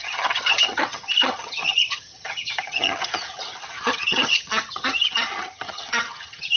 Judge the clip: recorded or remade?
remade